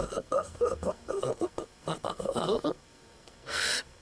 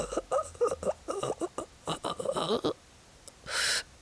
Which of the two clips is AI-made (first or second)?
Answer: first